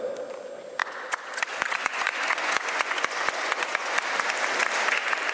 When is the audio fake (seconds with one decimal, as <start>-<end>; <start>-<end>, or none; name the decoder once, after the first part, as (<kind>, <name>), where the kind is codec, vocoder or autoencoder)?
0.8-4.0 (vocoder, Vocos)